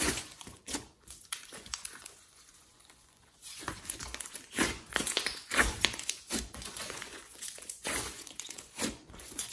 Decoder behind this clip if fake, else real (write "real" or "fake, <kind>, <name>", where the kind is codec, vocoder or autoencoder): fake, vocoder, Vocos